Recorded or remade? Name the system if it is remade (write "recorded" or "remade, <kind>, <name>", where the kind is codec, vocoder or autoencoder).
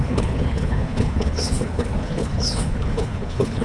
remade, codec, HILCodec